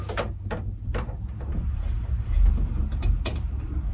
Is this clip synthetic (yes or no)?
no